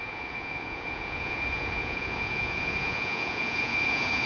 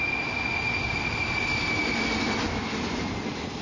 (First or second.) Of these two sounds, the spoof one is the first